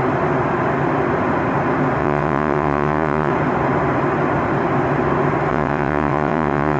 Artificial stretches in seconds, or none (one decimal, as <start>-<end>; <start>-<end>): 2.0-3.3; 5.5-6.8